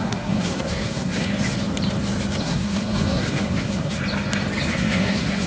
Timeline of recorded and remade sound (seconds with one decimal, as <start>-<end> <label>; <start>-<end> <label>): 0.0-1.3 remade; 1.3-2.4 recorded; 2.4-4.0 remade; 4.0-4.7 recorded; 4.7-5.5 remade